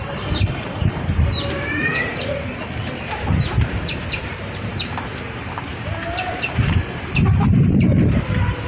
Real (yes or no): no